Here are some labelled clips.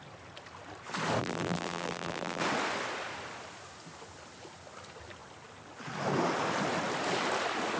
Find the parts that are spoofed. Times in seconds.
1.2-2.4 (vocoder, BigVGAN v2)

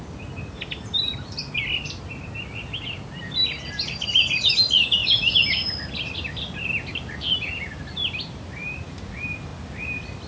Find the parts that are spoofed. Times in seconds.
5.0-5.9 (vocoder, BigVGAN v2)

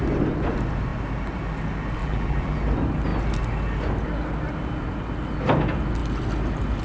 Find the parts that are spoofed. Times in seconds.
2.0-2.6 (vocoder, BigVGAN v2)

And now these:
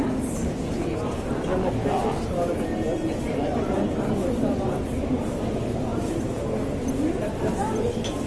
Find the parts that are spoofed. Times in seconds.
5.9-6.7 (vocoder, BigVGAN v2)

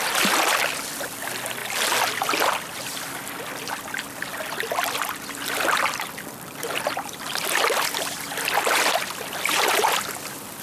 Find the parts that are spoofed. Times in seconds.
none

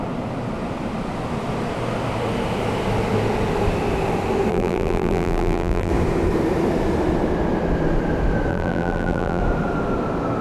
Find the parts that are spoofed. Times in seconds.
4.5-5.9 (vocoder, BigVGAN v2); 8.5-9.4